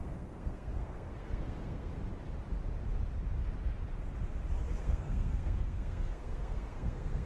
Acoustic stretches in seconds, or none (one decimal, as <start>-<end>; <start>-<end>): 1.9-4.8